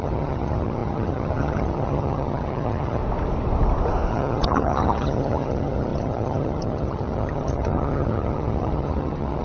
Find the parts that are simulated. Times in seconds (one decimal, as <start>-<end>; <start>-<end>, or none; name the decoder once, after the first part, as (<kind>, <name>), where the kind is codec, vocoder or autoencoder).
0.0-3.0 (vocoder, HiFi-GAN); 4.1-9.4